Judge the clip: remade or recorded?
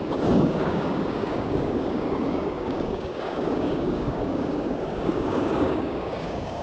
remade